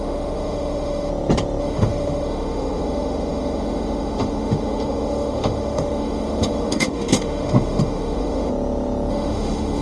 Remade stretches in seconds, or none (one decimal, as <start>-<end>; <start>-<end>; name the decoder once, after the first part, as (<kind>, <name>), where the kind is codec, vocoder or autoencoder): 0.0-1.1 (autoencoder, DAC-VAE); 1.6-8.5; 9.1-9.8